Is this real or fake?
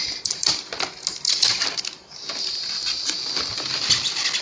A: real